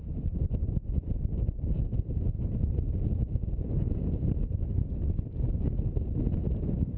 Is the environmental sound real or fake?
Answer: real